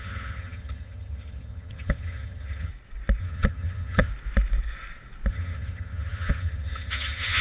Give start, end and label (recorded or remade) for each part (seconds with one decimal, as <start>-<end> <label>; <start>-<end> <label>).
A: 0.0-2.7 remade; 2.7-3.2 recorded; 3.2-4.1 remade; 4.1-5.3 recorded; 5.3-7.4 remade